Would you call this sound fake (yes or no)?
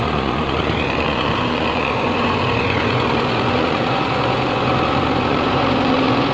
yes